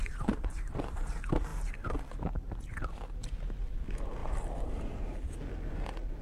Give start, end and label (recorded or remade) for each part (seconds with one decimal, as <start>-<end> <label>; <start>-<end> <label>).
0.0-1.1 remade; 1.1-4.2 recorded; 4.2-4.7 remade; 4.7-6.2 recorded